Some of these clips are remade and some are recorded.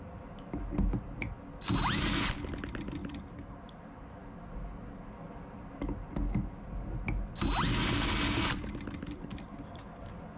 recorded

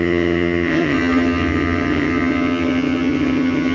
remade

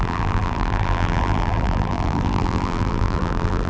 remade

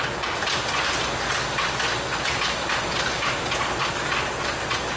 recorded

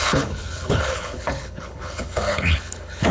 remade